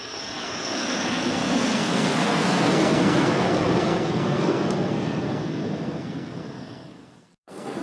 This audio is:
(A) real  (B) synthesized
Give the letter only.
B